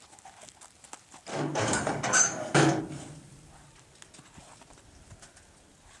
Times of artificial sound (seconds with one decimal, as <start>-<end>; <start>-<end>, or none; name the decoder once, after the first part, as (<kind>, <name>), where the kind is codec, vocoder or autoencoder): 1.3-2.8 (codec, DAC)